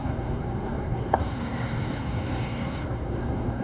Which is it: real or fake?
fake